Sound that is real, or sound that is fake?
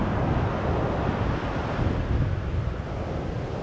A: real